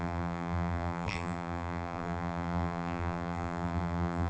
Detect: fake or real fake